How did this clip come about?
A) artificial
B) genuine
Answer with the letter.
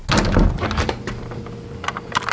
B